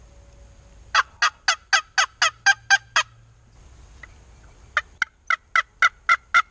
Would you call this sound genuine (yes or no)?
yes